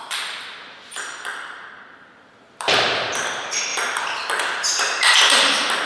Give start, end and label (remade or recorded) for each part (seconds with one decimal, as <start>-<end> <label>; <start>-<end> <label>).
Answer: 0.0-1.3 recorded; 1.3-2.3 remade; 2.3-5.9 recorded